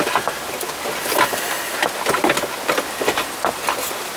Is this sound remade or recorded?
recorded